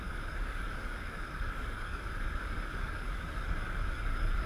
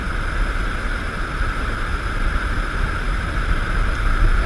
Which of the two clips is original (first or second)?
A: second